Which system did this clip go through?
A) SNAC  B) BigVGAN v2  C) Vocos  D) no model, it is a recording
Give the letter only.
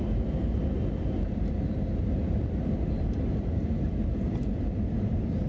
D